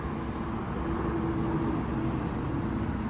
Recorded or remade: recorded